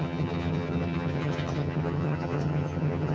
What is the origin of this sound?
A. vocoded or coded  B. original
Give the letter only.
A